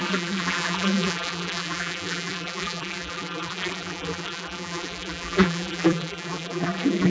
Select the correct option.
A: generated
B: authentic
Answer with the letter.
A